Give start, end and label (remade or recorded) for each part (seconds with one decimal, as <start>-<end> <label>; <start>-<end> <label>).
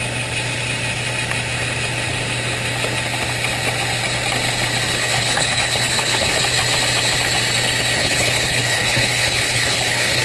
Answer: 0.0-4.9 recorded; 4.9-6.4 remade; 6.4-8.0 recorded; 8.0-10.2 remade